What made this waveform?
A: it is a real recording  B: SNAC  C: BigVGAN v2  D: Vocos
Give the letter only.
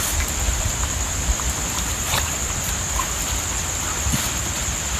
C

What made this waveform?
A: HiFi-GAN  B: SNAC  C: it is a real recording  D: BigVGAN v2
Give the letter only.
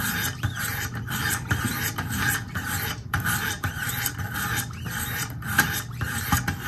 D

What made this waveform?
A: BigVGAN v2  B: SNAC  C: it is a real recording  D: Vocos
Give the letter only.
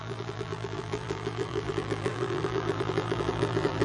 A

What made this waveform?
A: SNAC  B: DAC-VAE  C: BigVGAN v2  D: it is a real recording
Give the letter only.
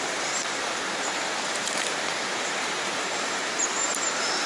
C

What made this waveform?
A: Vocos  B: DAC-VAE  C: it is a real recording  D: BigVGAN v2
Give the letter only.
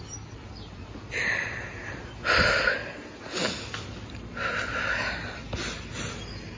C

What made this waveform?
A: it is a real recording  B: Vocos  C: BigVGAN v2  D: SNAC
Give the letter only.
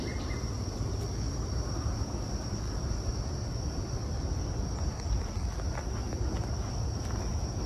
A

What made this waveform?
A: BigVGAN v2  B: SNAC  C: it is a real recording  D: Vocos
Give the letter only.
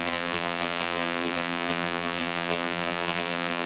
A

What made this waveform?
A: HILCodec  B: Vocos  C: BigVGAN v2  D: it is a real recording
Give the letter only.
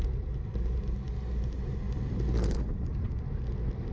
D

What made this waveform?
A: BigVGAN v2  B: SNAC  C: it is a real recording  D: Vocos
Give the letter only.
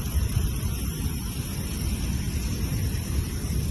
A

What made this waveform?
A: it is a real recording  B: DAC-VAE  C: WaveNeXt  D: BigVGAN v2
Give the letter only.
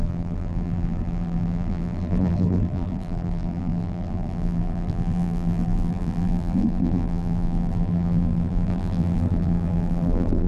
D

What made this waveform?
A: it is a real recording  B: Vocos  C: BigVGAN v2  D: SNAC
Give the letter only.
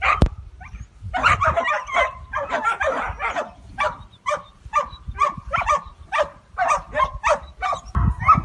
C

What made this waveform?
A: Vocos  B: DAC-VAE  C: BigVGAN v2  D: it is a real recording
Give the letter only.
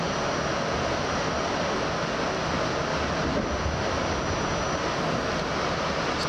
D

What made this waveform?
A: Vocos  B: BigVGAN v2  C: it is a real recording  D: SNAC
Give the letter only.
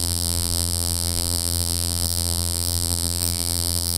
B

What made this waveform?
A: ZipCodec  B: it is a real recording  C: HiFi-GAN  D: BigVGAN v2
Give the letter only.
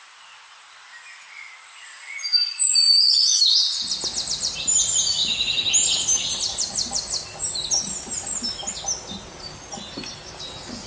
B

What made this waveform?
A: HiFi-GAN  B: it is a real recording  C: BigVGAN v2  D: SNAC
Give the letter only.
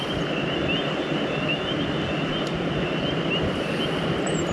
B